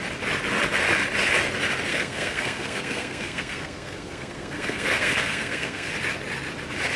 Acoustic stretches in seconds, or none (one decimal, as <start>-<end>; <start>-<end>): 0.0-1.9; 5.9-7.0